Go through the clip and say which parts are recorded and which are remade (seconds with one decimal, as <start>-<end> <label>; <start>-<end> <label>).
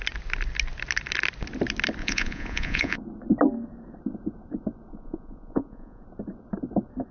0.0-2.0 recorded; 2.0-3.0 remade; 3.0-4.9 recorded; 4.9-6.0 remade; 6.0-7.1 recorded